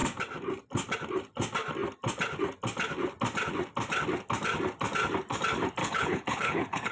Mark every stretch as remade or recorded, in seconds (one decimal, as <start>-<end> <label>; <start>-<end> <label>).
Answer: 0.0-5.8 recorded; 5.8-6.9 remade